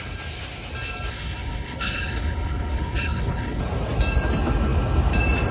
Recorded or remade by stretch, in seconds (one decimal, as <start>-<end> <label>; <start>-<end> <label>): 0.0-1.1 recorded; 1.1-3.6 remade; 3.6-5.5 recorded